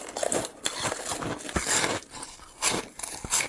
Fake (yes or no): yes